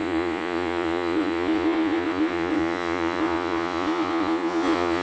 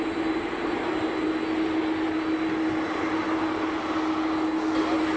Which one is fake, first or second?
first